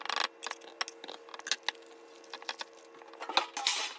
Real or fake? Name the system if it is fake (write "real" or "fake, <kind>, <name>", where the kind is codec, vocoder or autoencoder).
real